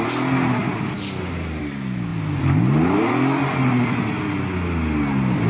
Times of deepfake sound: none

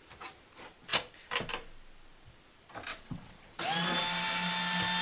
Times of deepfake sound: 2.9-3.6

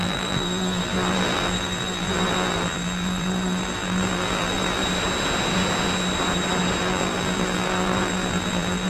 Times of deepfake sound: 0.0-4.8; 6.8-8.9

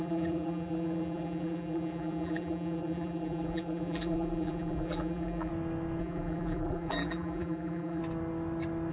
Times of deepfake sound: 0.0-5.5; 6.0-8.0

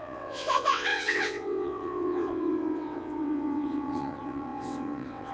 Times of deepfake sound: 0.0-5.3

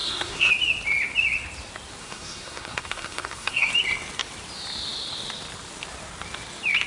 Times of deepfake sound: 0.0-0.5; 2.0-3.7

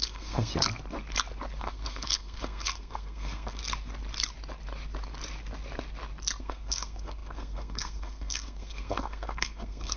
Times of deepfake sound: 0.0-0.5; 1.6-3.6; 6.4-10.0

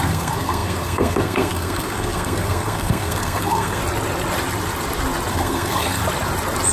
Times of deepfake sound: 0.0-3.8; 5.3-6.0